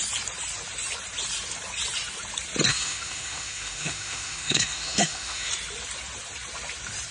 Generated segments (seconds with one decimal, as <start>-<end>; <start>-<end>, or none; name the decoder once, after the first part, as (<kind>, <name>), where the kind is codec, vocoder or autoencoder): 2.7-5.5 (autoencoder, DAC-VAE)